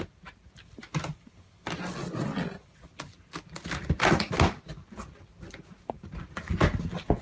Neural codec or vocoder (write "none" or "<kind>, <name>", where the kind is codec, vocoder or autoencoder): none